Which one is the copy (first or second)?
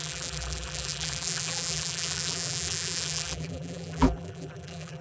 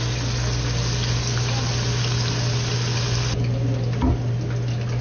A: first